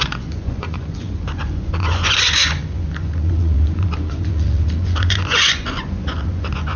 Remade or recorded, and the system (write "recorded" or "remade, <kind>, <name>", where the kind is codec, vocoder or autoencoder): remade, vocoder, Vocos